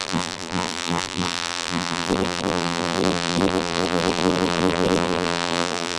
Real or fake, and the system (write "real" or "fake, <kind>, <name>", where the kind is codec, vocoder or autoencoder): fake, vocoder, BigVGAN v2